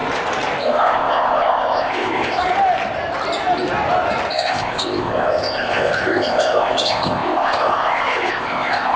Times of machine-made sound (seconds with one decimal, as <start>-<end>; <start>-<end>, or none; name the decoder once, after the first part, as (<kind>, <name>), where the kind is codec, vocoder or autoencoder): 0.6-2.4 (codec, ZipCodec); 4.3-9.0